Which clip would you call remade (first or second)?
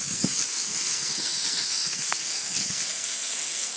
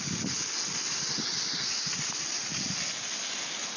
first